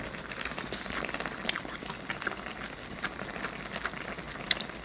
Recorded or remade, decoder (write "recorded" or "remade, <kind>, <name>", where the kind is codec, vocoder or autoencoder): recorded